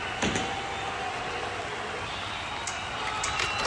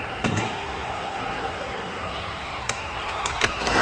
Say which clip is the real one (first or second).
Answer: first